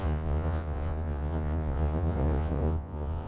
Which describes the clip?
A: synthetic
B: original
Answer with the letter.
A